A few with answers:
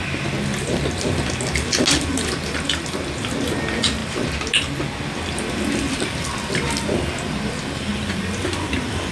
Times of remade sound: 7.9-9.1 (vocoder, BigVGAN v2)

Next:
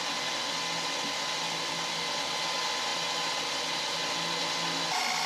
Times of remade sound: none

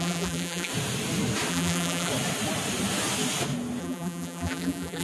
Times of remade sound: 0.0-0.7 (vocoder, BigVGAN v2); 1.5-2.1; 3.8-5.0